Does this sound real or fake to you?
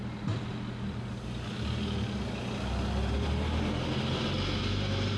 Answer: real